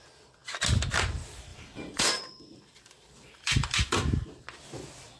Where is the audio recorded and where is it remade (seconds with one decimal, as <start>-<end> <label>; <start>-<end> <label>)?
0.0-1.5 recorded; 1.5-4.4 remade; 4.4-5.2 recorded